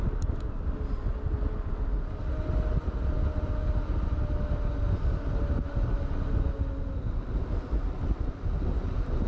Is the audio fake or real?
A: real